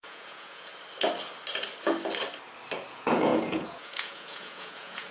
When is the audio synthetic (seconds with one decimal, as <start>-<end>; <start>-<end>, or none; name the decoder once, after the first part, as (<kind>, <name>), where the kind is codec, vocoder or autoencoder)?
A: 0.0-0.7 (vocoder, Vocos); 2.9-5.1